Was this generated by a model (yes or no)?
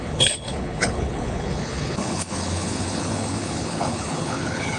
yes